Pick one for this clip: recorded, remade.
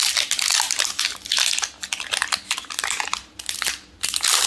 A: recorded